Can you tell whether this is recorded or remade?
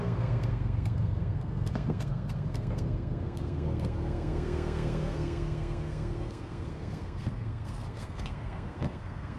remade